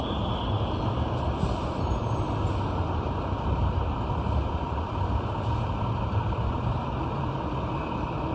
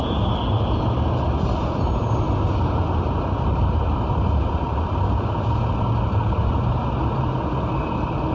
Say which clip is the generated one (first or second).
first